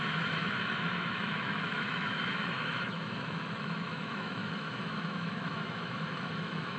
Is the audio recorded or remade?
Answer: remade